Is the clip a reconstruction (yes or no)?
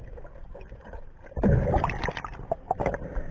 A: yes